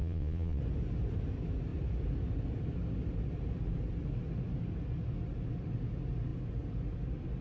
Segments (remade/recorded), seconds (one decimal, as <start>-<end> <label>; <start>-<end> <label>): 0.0-0.6 remade; 0.6-7.4 recorded